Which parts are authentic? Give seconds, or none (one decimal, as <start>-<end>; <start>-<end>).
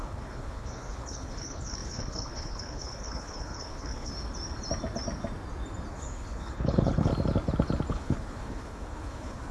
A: 4.1-5.9; 7.1-7.9